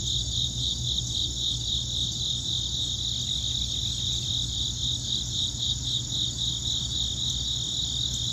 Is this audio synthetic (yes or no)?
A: no